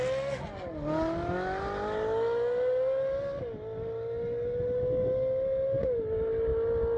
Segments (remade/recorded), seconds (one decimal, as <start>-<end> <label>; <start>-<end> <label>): 0.0-7.0 recorded